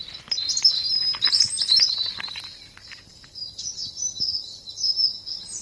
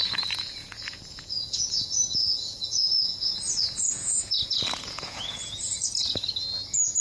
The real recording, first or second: first